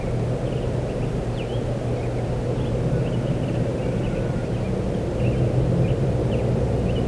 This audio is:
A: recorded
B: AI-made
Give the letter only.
A